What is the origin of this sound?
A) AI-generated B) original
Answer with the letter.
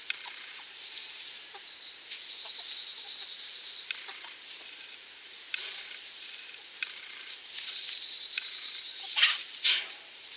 A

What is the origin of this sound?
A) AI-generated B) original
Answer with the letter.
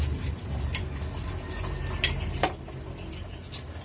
B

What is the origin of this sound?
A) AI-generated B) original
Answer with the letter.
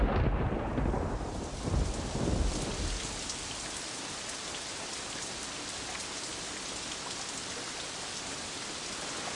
A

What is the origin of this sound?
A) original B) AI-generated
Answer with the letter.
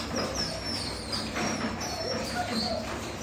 B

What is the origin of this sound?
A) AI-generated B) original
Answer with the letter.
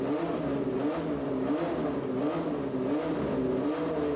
B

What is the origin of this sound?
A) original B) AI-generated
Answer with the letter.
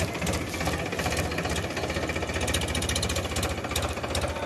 A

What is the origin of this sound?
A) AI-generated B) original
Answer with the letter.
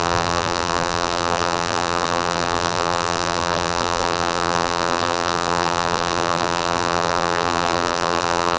A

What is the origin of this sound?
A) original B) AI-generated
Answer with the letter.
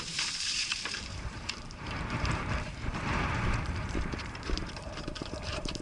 B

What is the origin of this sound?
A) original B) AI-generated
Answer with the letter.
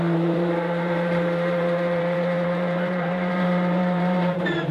B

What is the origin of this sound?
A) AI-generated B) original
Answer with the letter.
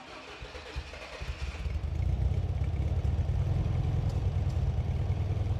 B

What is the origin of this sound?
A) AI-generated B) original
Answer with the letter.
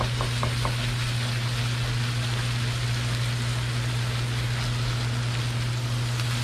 B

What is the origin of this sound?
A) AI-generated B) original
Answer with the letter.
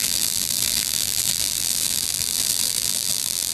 A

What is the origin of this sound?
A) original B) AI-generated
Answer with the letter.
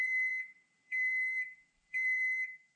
B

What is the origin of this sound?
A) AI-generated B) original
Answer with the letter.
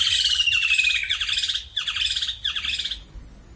B